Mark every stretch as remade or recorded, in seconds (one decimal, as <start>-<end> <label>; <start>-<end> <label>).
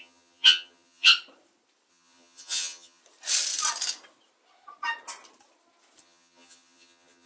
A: 0.0-1.1 remade; 1.1-1.9 recorded; 1.9-3.0 remade; 3.0-6.0 recorded; 6.0-7.3 remade